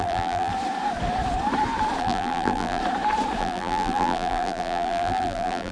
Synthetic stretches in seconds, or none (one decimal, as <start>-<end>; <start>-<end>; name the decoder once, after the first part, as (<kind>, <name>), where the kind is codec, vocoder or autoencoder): 0.0-0.5 (vocoder, BigVGAN v2); 2.0-2.8; 3.4-5.7